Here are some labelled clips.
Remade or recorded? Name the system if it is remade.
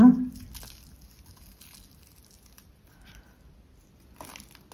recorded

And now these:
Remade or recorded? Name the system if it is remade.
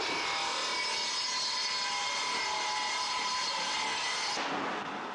recorded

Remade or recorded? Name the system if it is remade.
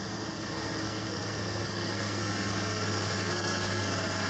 remade, codec, SNAC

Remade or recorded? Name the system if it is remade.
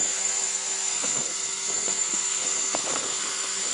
remade, codec, SNAC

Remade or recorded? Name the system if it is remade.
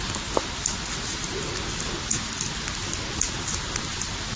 recorded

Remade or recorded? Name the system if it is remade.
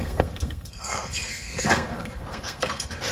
remade, codec, SNAC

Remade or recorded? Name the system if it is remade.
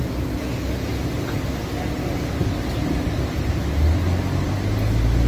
recorded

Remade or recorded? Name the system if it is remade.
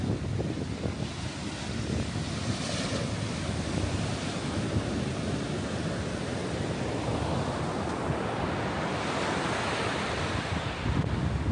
recorded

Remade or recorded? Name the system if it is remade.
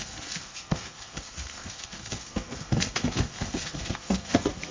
remade, codec, SNAC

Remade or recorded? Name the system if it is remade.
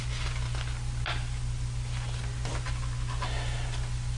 recorded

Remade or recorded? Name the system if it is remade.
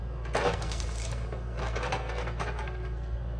remade, codec, SNAC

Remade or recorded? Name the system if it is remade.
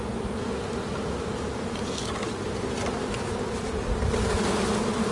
recorded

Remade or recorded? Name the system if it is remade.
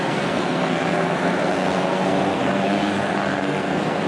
remade, codec, SNAC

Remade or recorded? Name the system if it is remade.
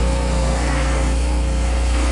remade, codec, SNAC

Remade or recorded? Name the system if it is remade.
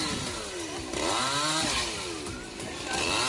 recorded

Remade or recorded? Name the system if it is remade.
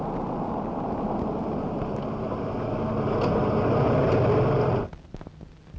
recorded